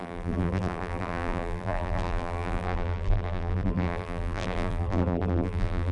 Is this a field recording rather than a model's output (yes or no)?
no